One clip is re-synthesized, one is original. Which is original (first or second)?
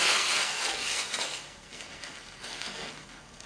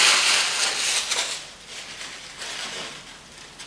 second